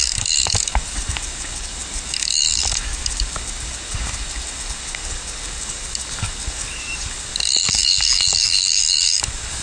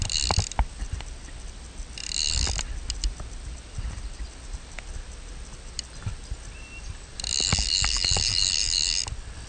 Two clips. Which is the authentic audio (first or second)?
second